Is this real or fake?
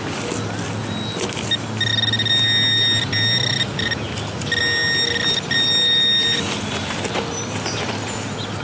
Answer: real